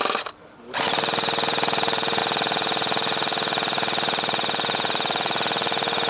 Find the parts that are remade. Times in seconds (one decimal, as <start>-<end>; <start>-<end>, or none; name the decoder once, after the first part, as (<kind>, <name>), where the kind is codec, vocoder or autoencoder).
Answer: 0.0-2.2 (vocoder, BigVGAN v2)